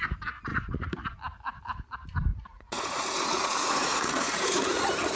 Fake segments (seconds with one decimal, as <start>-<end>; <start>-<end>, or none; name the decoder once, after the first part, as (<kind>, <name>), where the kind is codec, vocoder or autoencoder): 0.5-1.1 (vocoder, Vocos); 2.3-5.2